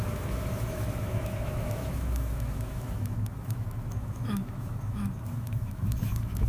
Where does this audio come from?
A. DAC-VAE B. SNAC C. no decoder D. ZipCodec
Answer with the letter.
A